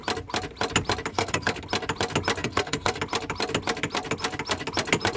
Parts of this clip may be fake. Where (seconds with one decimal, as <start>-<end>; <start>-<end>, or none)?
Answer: 1.1-1.6; 2.4-3.0

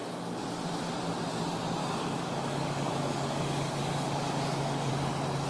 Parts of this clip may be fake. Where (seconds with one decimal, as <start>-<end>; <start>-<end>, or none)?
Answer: 1.8-4.9

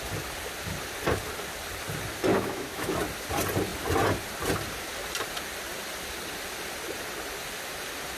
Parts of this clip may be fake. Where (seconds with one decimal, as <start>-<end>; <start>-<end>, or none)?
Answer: 2.3-2.9

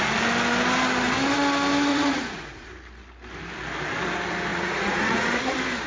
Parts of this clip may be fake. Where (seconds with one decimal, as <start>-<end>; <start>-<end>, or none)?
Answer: 1.9-2.7; 4.5-5.3

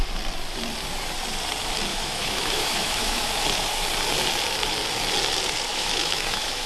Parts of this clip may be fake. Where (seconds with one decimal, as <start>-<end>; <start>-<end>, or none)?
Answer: 1.9-3.3; 5.7-6.7

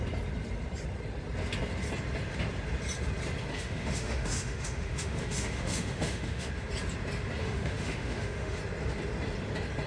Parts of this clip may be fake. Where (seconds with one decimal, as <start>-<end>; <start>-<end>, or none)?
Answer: 3.5-6.5; 7.4-8.6